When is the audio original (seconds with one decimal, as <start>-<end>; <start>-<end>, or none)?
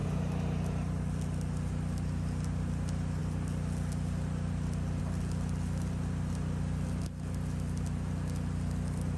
0.0-9.2